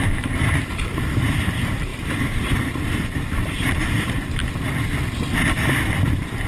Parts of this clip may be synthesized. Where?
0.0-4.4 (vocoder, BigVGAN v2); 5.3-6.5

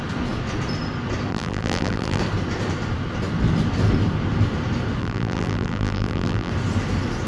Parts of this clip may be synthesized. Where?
1.3-2.2 (vocoder, BigVGAN v2); 5.0-6.5